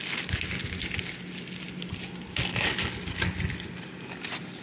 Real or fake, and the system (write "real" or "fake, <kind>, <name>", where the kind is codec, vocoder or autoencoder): real